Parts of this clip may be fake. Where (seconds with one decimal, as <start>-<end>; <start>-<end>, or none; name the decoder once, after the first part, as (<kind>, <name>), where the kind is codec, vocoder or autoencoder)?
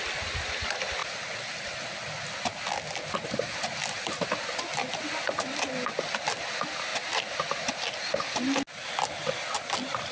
none